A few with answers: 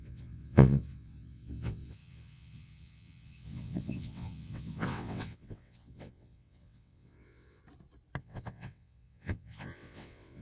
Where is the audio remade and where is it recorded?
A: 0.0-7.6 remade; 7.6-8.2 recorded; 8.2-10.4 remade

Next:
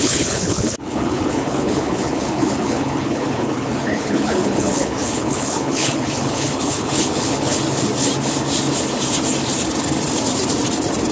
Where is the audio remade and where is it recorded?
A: 0.0-7.6 remade; 7.6-11.1 recorded